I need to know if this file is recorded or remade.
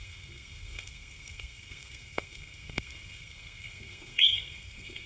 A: remade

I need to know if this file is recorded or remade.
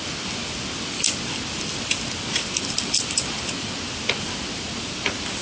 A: recorded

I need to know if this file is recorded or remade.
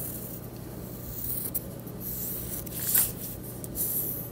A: recorded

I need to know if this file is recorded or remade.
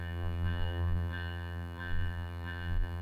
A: remade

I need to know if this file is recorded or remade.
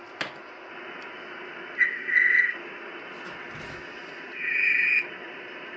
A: recorded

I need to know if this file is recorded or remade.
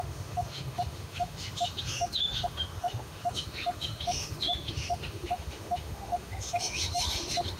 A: remade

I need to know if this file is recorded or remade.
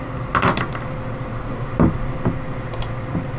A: recorded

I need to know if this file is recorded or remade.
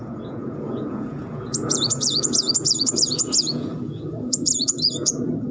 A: remade